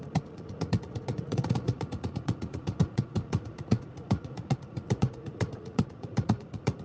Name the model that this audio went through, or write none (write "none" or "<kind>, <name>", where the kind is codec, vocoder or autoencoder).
vocoder, Vocos